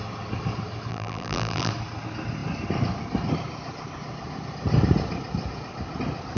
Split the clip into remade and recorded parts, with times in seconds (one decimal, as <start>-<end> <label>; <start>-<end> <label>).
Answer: 0.0-0.9 recorded; 0.9-1.7 remade; 1.7-6.4 recorded

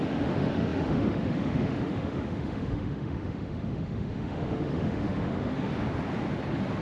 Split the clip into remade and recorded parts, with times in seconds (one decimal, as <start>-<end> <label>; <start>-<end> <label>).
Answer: 0.0-5.7 remade; 5.7-6.8 recorded